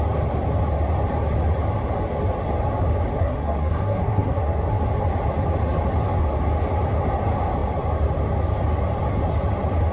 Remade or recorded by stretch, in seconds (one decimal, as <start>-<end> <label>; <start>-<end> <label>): 0.0-3.1 recorded; 3.1-4.8 remade; 4.8-9.9 recorded